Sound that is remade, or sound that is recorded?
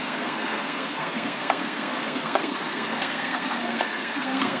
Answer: remade